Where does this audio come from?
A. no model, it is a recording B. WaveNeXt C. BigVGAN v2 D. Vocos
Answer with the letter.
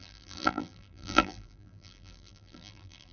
C